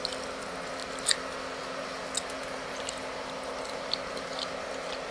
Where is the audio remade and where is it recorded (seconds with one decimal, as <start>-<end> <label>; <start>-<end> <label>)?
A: 0.0-5.1 recorded

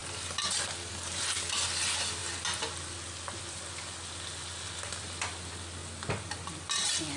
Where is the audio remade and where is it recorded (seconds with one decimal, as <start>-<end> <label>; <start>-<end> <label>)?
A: 0.0-7.2 recorded

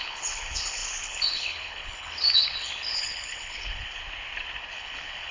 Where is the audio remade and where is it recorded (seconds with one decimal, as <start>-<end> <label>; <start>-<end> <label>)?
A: 0.0-4.0 remade; 4.0-4.7 recorded; 4.7-5.3 remade

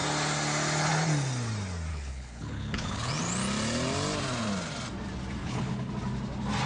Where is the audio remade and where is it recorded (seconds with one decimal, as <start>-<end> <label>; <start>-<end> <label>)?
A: 0.0-1.9 recorded; 1.9-3.1 remade; 3.1-5.4 recorded; 5.4-5.9 remade; 5.9-6.7 recorded